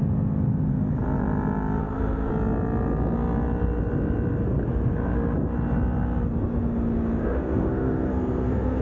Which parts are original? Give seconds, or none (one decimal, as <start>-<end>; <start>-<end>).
0.0-1.8; 2.3-7.2